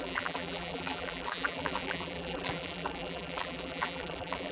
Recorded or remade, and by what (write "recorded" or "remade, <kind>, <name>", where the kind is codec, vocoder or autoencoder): remade, vocoder, BigVGAN v2